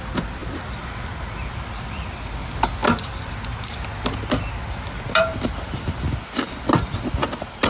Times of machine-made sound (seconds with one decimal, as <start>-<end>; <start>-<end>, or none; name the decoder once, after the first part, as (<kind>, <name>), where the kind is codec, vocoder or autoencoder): none